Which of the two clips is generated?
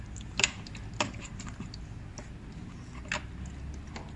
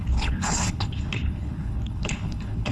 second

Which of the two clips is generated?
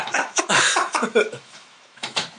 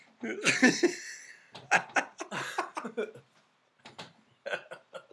first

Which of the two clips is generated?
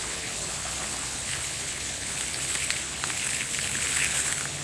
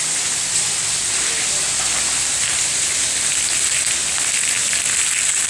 first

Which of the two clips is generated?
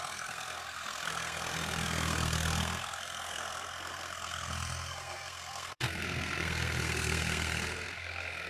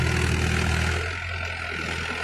first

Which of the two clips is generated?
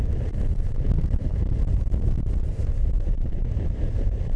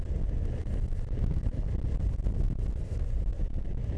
first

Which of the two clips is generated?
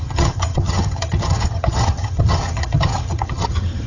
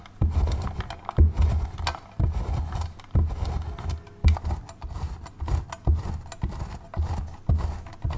first